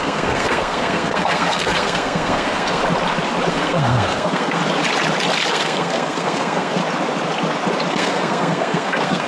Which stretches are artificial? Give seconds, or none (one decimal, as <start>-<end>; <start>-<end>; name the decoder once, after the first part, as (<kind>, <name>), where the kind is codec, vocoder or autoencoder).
0.0-2.8 (codec, SNAC); 3.5-4.6; 5.5-6.8; 7.9-9.3